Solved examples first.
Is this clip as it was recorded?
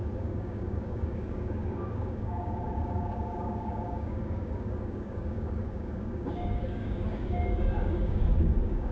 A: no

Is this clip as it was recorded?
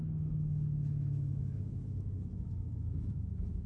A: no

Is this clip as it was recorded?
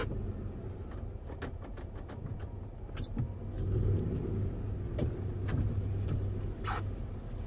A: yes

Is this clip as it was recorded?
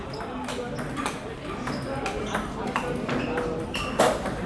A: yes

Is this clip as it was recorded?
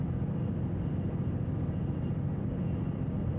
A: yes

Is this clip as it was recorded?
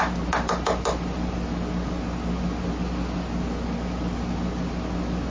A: yes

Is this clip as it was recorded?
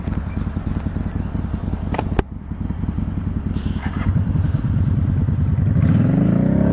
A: yes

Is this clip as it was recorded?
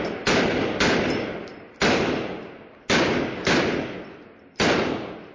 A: yes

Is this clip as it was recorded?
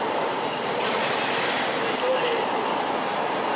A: yes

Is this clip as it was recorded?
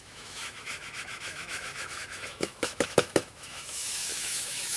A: no